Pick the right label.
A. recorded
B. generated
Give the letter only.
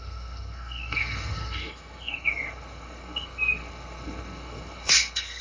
B